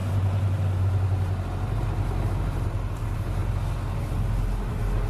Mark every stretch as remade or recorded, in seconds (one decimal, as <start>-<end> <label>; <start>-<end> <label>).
0.0-2.4 recorded; 2.4-3.4 remade; 3.4-4.0 recorded; 4.0-5.1 remade